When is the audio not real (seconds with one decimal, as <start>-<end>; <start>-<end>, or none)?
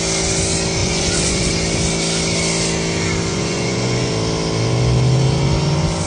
0.8-1.5; 3.3-4.1